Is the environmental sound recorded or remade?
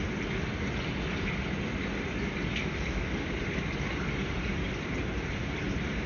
recorded